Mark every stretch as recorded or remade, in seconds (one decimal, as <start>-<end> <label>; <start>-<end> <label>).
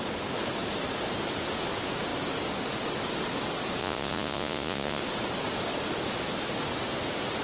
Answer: 0.0-3.8 recorded; 3.8-5.0 remade; 5.0-7.4 recorded